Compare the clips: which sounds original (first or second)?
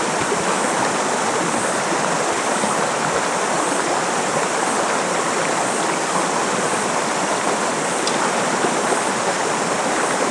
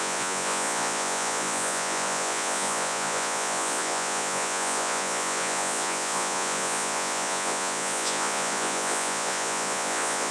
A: first